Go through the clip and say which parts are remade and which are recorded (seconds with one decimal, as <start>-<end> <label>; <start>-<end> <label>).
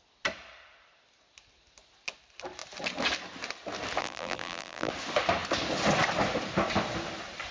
0.0-4.0 recorded; 4.0-4.9 remade; 4.9-7.5 recorded